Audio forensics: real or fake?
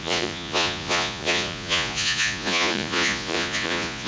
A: fake